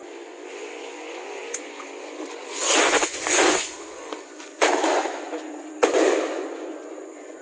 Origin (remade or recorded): remade